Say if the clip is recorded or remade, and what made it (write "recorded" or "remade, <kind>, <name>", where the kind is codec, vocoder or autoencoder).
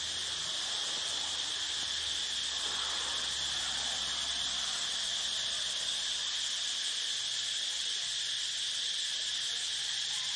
recorded